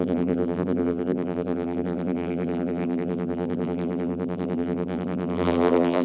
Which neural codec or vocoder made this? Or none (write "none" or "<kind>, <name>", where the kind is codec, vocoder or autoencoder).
vocoder, BigVGAN v2